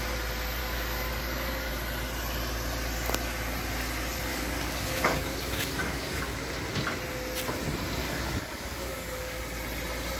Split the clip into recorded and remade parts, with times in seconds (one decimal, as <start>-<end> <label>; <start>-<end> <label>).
0.0-0.6 recorded; 0.6-1.7 remade; 1.7-4.3 recorded; 4.3-6.4 remade; 6.4-8.0 recorded; 8.0-9.4 remade; 9.4-10.2 recorded